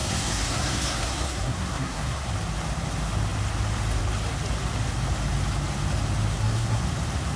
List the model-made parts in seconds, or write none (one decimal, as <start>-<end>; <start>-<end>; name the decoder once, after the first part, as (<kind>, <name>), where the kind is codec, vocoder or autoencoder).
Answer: 0.0-2.3 (codec, SNAC); 6.3-6.8